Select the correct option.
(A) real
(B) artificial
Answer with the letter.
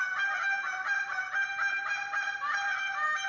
A